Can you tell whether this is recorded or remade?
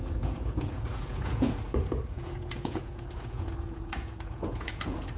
remade